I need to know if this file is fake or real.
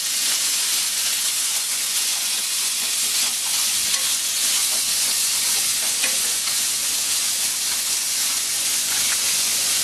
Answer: fake